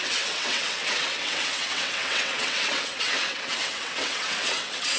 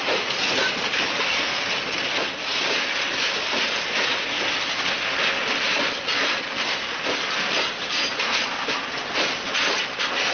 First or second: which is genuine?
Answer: second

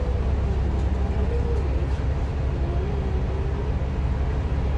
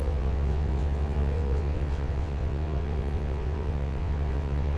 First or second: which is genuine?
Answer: first